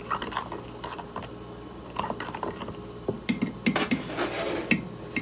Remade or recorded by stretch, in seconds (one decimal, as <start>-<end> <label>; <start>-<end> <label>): 0.0-5.2 recorded